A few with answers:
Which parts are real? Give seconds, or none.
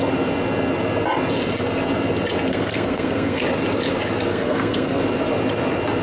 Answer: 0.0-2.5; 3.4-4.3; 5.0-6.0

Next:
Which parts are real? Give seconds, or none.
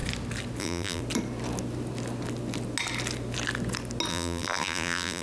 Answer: 0.0-0.6; 1.0-4.1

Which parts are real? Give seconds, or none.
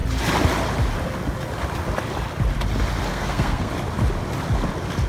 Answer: 0.0-3.1; 3.7-5.1